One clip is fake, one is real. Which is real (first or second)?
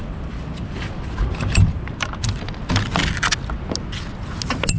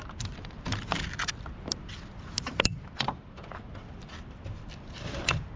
first